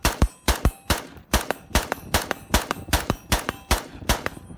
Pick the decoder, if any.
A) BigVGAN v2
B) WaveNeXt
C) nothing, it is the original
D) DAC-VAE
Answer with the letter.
A